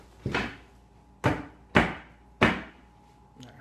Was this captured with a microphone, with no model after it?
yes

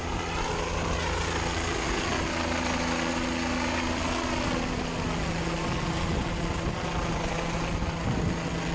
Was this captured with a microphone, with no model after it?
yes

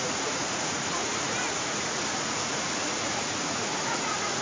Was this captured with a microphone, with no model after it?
no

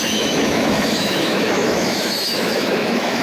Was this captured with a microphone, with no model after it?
no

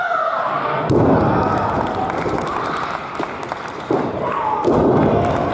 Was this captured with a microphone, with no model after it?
no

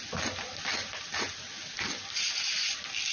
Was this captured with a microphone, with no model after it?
yes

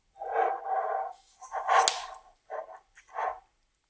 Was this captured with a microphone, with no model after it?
yes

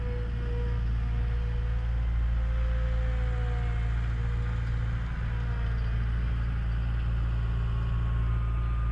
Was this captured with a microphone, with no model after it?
yes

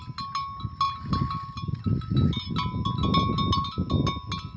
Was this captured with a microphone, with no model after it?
yes